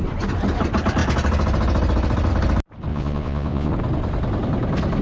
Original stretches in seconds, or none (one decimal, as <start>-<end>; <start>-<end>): 0.0-2.9; 3.7-5.0